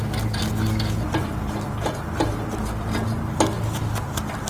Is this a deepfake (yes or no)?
no